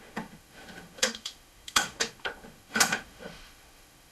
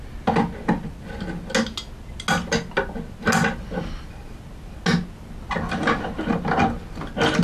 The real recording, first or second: second